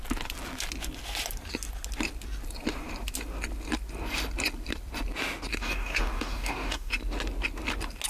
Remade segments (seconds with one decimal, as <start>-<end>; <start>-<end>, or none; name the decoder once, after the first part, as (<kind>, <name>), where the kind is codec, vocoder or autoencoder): 5.5-6.9 (codec, DAC)